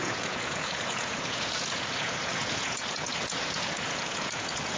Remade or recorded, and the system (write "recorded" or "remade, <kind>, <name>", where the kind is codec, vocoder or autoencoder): remade, vocoder, Vocos